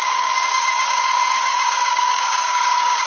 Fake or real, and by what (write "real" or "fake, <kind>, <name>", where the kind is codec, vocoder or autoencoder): fake, codec, DAC